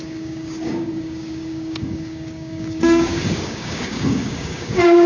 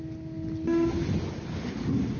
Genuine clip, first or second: second